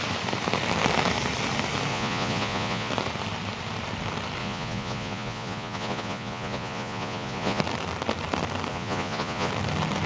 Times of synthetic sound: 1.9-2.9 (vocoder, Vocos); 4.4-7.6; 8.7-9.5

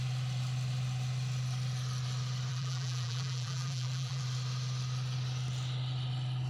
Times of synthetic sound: 2.5-4.2 (vocoder, BigVGAN v2)

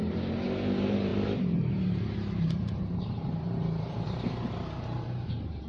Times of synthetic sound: 0.0-5.7 (vocoder, BigVGAN v2)

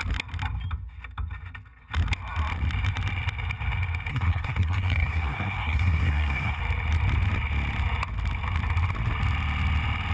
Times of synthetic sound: 4.1-6.6 (codec, SNAC)